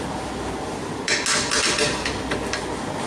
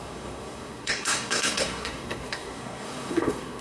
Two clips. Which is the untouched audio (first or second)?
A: first